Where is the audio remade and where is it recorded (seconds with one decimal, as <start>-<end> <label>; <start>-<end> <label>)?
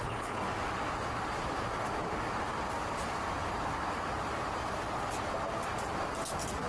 0.0-0.5 remade; 0.5-6.7 recorded